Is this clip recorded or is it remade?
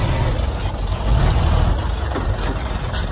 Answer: recorded